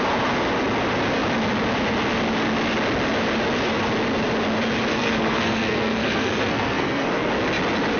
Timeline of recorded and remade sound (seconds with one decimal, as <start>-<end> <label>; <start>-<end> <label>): 0.0-4.9 recorded; 4.9-7.3 remade; 7.3-8.0 recorded